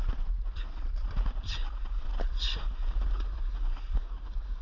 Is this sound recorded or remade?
recorded